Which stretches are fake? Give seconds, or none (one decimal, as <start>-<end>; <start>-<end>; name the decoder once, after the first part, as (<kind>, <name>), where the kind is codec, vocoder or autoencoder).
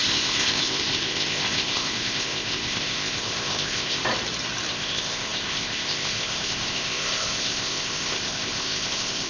0.0-4.0 (codec, ZipCodec); 4.7-9.3